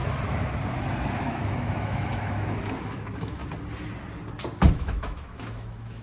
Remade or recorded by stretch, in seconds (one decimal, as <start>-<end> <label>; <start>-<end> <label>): 0.0-1.2 recorded; 1.2-3.4 remade; 3.4-4.7 recorded; 4.7-6.0 remade